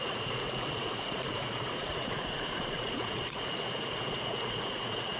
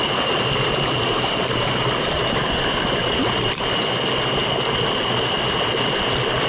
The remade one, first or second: first